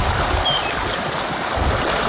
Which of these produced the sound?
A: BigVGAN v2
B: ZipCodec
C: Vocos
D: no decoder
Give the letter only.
D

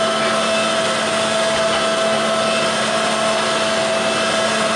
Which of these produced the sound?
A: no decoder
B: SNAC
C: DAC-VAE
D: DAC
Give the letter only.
A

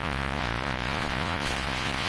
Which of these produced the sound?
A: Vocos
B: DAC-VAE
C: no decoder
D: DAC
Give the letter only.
A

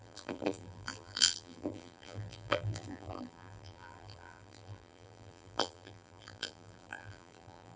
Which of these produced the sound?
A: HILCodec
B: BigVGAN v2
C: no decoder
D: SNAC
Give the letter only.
B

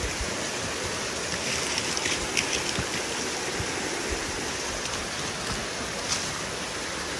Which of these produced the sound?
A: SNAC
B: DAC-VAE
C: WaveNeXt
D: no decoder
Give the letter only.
D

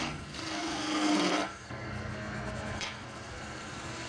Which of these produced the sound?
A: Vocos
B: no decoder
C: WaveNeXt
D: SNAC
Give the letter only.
D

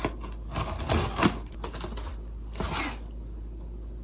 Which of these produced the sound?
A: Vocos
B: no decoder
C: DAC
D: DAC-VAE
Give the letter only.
B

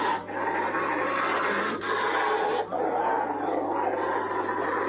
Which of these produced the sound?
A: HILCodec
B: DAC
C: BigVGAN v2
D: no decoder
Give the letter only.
D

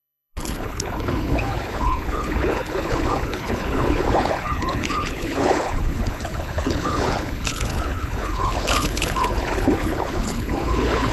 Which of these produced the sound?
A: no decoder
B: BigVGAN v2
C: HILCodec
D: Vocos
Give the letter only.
C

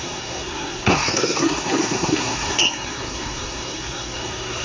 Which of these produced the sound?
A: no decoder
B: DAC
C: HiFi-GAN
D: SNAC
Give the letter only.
D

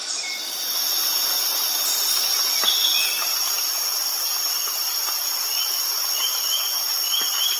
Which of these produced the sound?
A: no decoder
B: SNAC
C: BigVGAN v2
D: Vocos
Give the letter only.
A